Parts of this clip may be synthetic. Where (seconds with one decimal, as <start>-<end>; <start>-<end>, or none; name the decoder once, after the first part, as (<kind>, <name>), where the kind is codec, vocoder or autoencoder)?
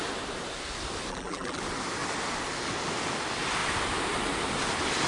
1.1-1.6 (vocoder, BigVGAN v2)